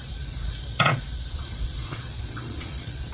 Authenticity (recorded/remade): remade